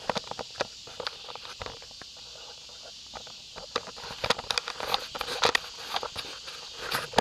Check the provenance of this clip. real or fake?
real